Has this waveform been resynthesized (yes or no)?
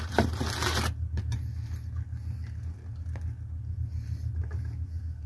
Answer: no